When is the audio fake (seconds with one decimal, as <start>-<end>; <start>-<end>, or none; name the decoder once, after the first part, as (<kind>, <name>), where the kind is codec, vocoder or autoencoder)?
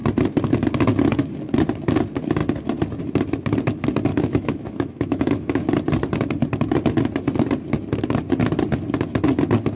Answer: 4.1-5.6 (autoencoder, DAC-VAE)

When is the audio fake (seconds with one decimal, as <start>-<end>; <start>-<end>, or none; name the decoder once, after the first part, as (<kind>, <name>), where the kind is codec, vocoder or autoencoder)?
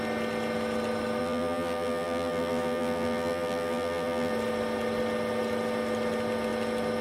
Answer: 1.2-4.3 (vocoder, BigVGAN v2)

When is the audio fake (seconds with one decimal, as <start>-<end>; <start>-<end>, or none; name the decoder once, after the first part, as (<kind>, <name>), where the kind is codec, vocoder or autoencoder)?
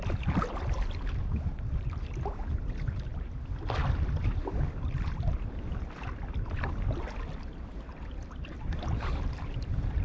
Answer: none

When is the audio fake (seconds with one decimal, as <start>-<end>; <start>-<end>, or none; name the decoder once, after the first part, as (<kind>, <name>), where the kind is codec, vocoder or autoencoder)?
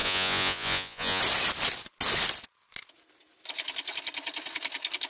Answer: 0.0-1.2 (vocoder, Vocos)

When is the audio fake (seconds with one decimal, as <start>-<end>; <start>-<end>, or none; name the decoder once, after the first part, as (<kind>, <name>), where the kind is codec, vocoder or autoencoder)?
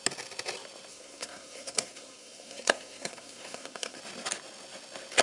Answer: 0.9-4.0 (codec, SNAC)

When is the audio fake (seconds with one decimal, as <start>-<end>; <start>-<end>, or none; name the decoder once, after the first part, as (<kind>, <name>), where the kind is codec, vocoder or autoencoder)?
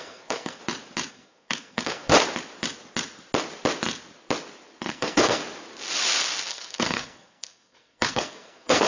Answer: 0.0-0.6 (codec, SNAC); 1.1-2.1; 4.9-5.4; 6.5-8.9